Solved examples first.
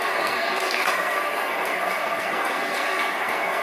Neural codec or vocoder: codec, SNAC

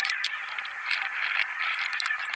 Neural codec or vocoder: vocoder, BigVGAN v2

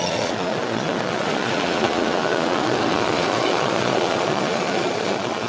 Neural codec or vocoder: vocoder, Vocos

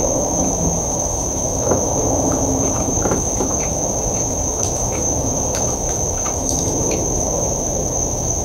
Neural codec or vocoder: autoencoder, DAC-VAE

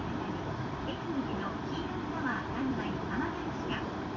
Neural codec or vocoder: vocoder, BigVGAN v2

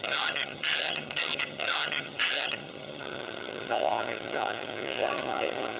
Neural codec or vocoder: vocoder, HiFi-GAN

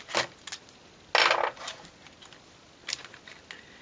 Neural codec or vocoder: none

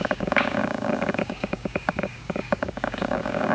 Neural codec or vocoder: codec, DAC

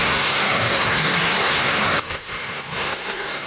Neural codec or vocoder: codec, SNAC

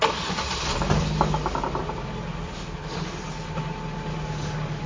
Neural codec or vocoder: none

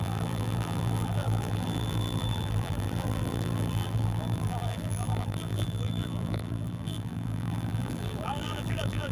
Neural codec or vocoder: vocoder, BigVGAN v2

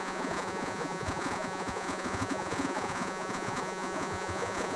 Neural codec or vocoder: vocoder, Vocos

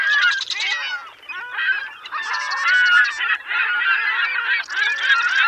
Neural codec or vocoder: none